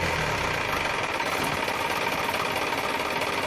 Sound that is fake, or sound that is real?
real